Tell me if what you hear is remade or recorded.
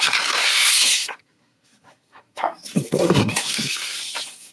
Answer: remade